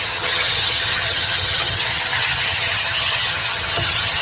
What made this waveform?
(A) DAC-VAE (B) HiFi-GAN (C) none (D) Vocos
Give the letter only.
B